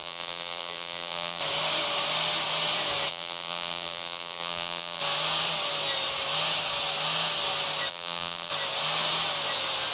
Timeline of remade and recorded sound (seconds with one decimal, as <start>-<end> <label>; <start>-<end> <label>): 0.0-1.4 remade; 1.4-3.1 recorded; 3.1-5.0 remade; 5.0-7.9 recorded; 7.9-8.5 remade; 8.5-9.9 recorded